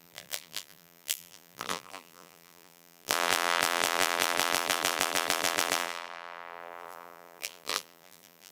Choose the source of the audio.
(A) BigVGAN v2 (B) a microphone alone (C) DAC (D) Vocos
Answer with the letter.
A